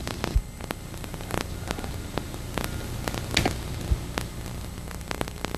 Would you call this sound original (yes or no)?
yes